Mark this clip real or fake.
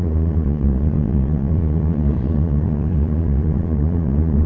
fake